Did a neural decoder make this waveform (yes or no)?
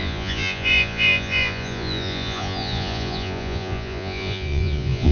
yes